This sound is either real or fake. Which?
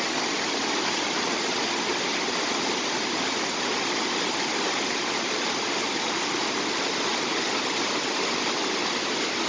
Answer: real